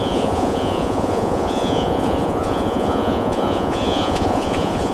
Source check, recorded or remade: remade